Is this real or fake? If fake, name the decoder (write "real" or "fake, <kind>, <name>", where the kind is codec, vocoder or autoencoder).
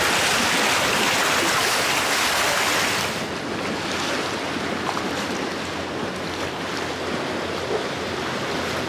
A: real